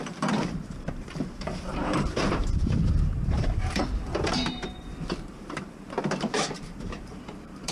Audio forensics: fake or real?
fake